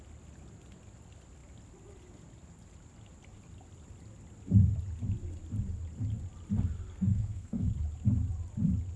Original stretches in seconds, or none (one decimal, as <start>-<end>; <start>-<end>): 0.0-6.9; 7.7-9.0